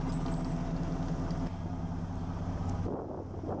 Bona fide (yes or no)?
yes